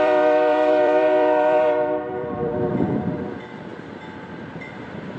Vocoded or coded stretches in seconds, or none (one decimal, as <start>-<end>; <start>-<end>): 0.0-5.2

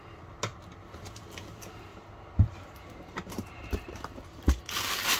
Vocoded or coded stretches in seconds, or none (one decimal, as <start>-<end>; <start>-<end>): 0.5-1.1; 1.9-4.6

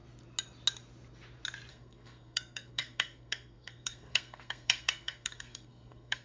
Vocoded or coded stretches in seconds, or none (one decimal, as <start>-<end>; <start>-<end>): 1.7-6.2

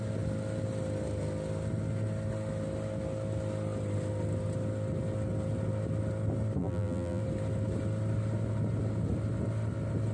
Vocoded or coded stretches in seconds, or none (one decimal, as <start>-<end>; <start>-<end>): 6.6-7.2